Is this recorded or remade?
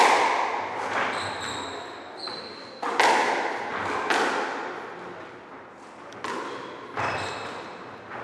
recorded